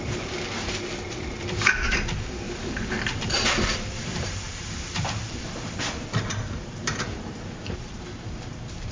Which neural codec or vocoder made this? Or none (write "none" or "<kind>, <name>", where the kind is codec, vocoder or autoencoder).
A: vocoder, BigVGAN v2